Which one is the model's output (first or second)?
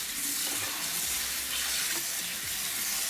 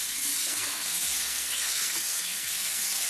second